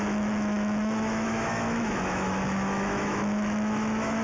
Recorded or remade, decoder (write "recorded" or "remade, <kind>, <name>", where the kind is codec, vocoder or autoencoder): remade, autoencoder, DAC-VAE